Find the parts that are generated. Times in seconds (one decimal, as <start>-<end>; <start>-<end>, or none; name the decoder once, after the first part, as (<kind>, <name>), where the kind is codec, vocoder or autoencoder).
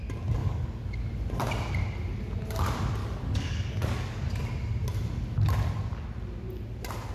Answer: 0.4-1.1 (codec, DAC); 3.0-4.4